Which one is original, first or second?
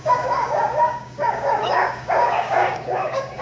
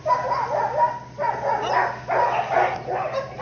second